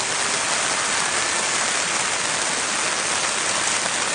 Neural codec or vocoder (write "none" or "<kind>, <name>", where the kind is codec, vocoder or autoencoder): none